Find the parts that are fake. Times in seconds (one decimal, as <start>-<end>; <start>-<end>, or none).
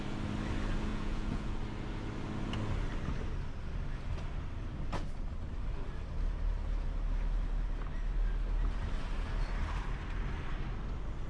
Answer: 0.9-1.5